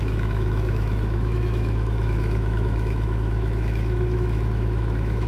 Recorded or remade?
remade